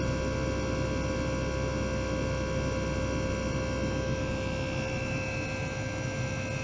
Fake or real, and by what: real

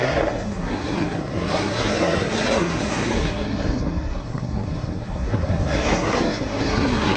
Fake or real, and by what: fake, codec, SNAC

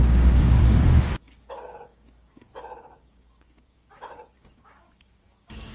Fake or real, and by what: fake, codec, DAC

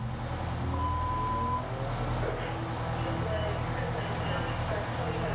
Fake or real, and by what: real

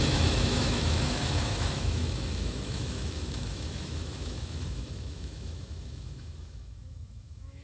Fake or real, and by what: fake, autoencoder, DAC-VAE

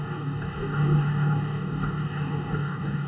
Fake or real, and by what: fake, codec, DAC